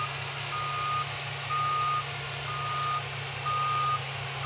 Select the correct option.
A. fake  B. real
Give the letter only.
B